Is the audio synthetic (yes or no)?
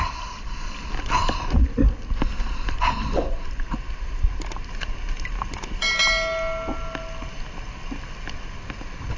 no